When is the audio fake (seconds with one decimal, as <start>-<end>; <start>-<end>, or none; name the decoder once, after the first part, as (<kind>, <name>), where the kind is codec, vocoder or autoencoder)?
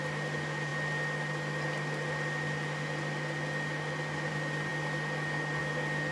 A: none